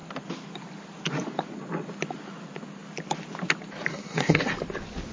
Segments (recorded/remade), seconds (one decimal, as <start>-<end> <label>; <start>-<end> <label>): 0.0-3.9 recorded; 3.9-4.5 remade; 4.5-5.1 recorded